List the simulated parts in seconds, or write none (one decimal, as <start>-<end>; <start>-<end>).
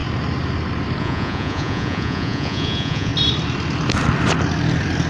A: 1.0-3.1